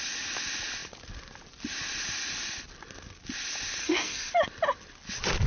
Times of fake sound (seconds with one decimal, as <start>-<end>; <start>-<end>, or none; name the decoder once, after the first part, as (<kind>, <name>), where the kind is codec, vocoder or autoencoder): 3.8-4.3 (codec, SNAC)